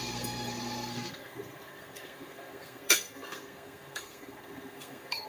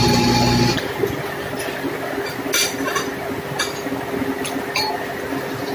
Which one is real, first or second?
second